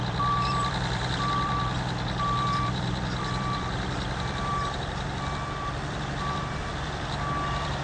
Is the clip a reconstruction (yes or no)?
yes